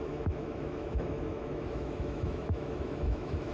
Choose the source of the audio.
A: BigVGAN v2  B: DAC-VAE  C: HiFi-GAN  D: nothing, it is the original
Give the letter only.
B